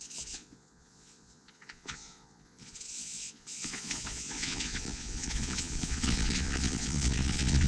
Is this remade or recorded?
remade